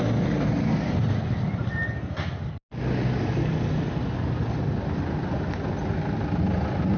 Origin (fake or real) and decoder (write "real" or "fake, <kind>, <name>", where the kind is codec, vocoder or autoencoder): real